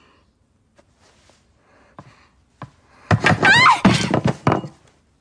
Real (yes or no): yes